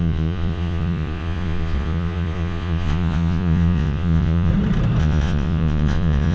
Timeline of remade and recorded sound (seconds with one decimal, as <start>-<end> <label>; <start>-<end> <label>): 0.0-4.5 remade; 4.5-5.0 recorded; 5.0-6.3 remade